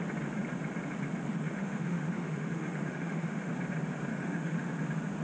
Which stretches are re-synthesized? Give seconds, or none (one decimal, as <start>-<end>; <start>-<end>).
1.3-3.5; 4.1-4.7